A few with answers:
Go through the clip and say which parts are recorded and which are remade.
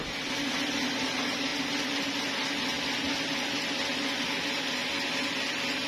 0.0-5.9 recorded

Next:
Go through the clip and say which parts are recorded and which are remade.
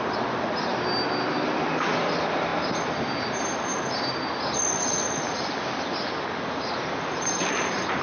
0.0-0.7 remade; 0.7-2.0 recorded; 2.0-3.7 remade; 3.7-6.4 recorded; 6.4-8.0 remade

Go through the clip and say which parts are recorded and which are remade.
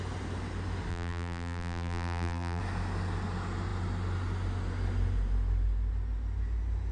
0.0-0.9 recorded; 0.9-2.6 remade; 2.6-6.9 recorded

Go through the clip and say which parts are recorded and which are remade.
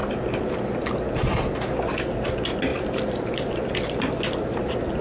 0.0-2.7 recorded; 2.7-4.6 remade; 4.6-5.0 recorded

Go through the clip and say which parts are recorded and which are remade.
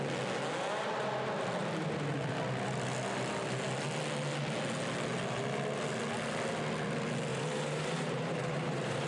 0.0-7.3 recorded; 7.3-9.1 remade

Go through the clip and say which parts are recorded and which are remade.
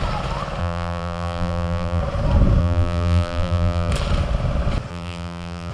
0.0-0.6 recorded; 0.6-2.0 remade; 2.0-2.6 recorded; 2.6-3.9 remade; 3.9-4.9 recorded; 4.9-5.7 remade